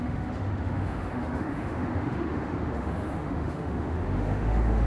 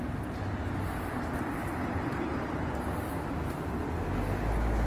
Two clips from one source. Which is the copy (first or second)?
first